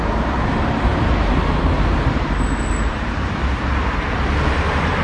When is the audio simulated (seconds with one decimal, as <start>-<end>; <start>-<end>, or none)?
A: 0.0-0.9; 2.7-3.4; 4.5-5.0